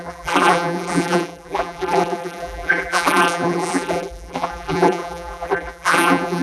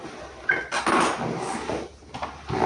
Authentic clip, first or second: second